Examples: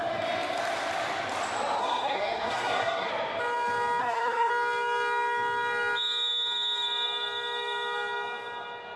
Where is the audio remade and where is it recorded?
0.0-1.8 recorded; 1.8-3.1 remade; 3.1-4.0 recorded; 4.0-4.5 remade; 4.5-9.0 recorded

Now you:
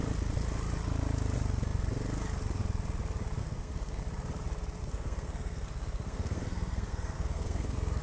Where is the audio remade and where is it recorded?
0.0-3.4 recorded; 3.4-4.0 remade; 4.0-4.8 recorded; 4.8-8.0 remade

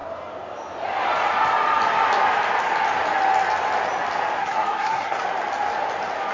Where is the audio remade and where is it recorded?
0.0-4.4 recorded; 4.4-5.2 remade; 5.2-6.3 recorded